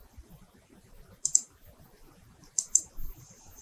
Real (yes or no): no